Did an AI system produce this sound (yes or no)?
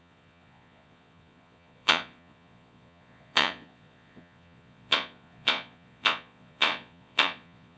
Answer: yes